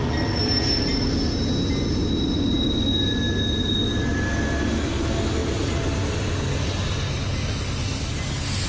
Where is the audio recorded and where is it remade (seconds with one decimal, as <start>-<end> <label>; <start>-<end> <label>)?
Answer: 0.0-5.4 recorded; 5.4-5.9 remade; 5.9-8.7 recorded